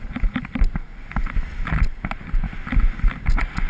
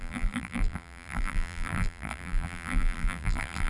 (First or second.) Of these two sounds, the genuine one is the first